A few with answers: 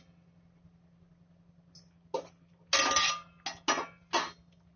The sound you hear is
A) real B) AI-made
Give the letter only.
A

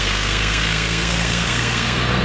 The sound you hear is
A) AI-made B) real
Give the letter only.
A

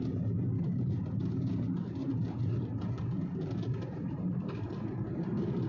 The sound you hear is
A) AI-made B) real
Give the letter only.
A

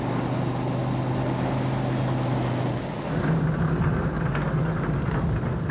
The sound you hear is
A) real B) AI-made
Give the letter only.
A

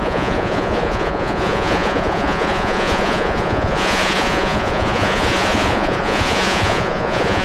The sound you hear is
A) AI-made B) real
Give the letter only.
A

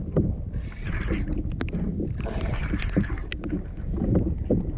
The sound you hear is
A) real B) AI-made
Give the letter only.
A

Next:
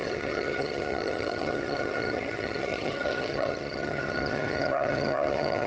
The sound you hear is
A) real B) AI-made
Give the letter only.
B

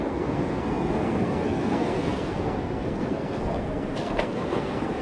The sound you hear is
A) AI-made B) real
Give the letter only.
A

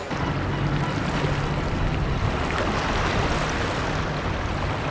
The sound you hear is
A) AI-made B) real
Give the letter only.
B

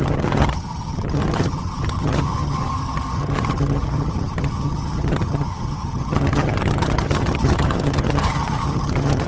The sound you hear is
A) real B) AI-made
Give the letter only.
B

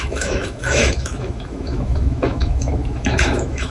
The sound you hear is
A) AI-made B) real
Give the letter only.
A